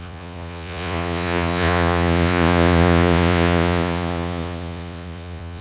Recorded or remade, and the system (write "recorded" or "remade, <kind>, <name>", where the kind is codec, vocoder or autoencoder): remade, vocoder, Vocos